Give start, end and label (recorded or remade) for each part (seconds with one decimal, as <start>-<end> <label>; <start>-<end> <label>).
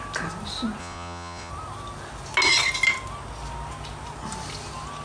0.0-0.8 recorded; 0.8-1.5 remade; 1.5-5.0 recorded